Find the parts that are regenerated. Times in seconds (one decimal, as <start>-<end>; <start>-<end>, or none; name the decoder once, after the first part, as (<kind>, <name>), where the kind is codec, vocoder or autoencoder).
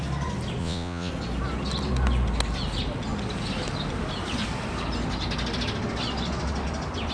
0.6-1.1 (vocoder, Vocos)